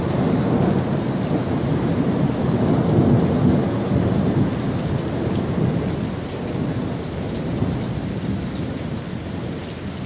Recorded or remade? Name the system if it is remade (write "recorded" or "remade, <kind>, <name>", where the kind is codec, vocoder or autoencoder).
recorded